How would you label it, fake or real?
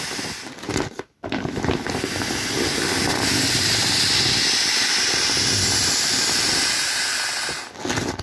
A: real